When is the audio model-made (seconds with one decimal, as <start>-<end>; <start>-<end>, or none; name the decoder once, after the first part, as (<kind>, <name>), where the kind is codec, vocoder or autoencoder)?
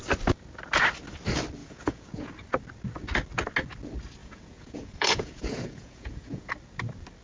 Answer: 1.6-2.3 (vocoder, Vocos); 4.2-6.5